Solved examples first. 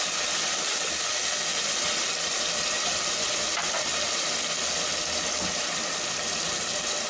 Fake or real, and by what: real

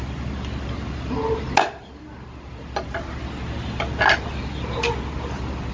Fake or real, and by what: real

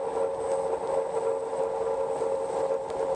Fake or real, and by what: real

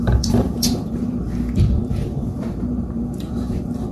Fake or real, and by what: fake, vocoder, BigVGAN v2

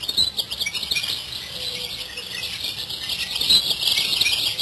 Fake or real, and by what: real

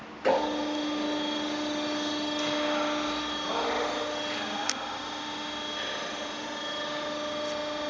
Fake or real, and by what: real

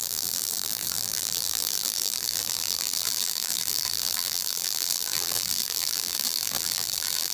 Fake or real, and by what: fake, vocoder, BigVGAN v2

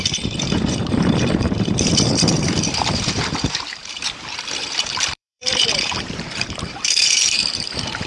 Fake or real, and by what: fake, vocoder, BigVGAN v2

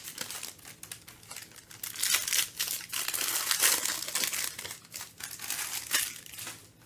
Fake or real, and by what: real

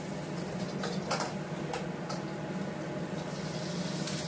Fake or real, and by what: real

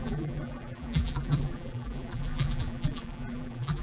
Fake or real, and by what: fake, vocoder, BigVGAN v2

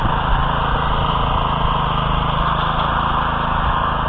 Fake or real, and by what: real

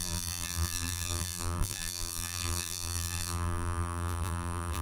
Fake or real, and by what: fake, vocoder, BigVGAN v2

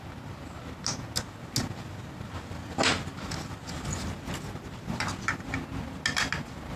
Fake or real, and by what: real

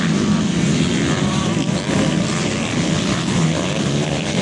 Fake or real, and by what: real